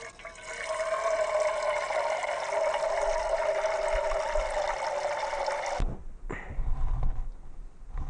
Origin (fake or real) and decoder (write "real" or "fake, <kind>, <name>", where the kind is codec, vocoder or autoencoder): real